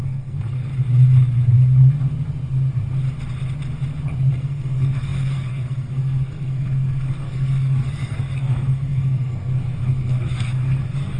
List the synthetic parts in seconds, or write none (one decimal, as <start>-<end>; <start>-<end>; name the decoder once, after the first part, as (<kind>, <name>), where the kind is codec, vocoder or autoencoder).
0.0-0.7 (codec, SNAC); 4.3-11.2